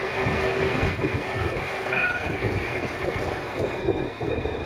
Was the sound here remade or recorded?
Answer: remade